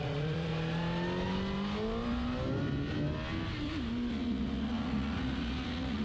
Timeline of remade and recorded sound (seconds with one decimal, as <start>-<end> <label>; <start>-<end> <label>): 0.0-0.5 remade; 0.5-4.1 recorded; 4.1-6.0 remade

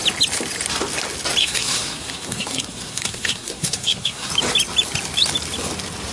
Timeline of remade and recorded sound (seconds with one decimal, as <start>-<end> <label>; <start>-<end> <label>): 0.0-1.4 recorded; 1.4-4.3 remade; 4.3-6.1 recorded

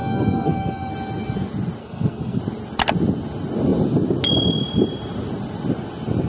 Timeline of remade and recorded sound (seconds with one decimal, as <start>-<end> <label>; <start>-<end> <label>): 0.0-0.9 remade; 0.9-1.8 recorded; 1.8-2.4 remade; 2.4-6.3 recorded

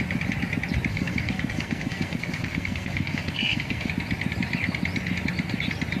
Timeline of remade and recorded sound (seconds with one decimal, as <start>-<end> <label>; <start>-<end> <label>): 0.0-0.9 recorded; 0.9-3.9 remade; 3.9-6.0 recorded

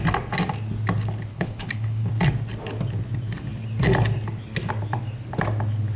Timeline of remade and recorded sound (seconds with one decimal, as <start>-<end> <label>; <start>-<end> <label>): 0.0-1.3 recorded; 1.3-2.1 remade; 2.1-6.0 recorded

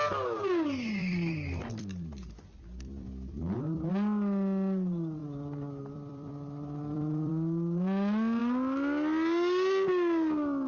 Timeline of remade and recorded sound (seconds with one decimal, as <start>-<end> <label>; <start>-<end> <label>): 0.0-1.0 recorded; 1.0-3.9 remade; 3.9-5.2 recorded; 5.2-7.3 remade; 7.3-10.7 recorded

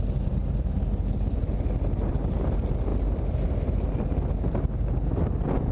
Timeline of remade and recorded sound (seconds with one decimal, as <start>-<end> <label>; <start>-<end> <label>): 0.0-0.4 recorded; 0.4-1.4 remade; 1.4-2.9 recorded; 2.9-4.2 remade; 4.2-5.7 recorded

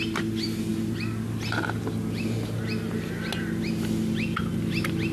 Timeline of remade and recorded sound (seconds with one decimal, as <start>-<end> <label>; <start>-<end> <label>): 0.0-5.1 recorded